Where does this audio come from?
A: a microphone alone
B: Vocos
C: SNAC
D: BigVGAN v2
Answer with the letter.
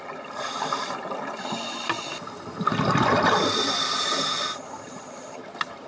A